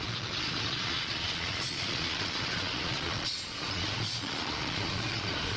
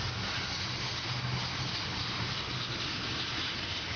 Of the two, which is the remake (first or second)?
first